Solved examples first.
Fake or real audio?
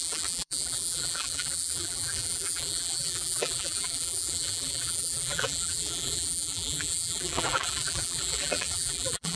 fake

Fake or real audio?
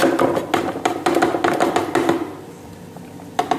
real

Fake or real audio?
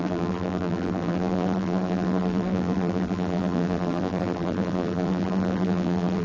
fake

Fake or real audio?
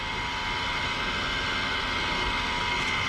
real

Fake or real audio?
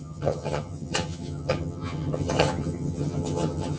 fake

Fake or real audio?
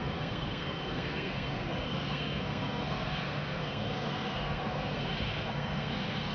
fake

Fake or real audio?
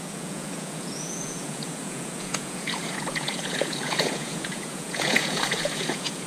fake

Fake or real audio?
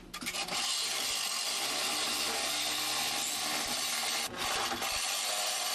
real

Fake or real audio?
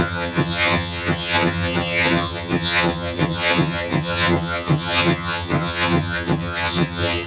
fake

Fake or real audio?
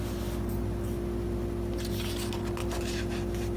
real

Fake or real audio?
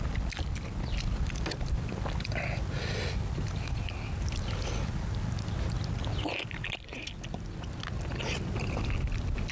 real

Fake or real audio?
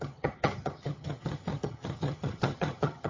fake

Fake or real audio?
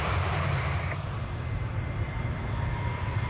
fake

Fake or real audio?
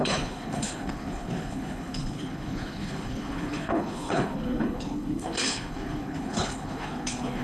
fake